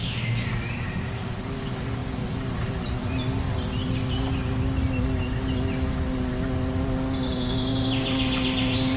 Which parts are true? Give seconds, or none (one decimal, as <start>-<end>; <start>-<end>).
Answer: 0.0-9.0